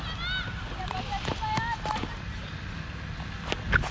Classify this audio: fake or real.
real